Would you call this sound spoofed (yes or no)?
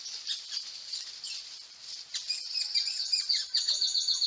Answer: no